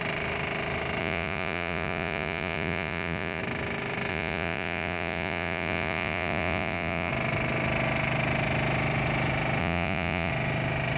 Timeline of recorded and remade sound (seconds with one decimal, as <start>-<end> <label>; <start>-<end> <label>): 0.0-1.0 recorded; 1.0-3.4 remade; 3.4-4.1 recorded; 4.1-7.1 remade; 7.1-9.6 recorded; 9.6-10.3 remade; 10.3-11.0 recorded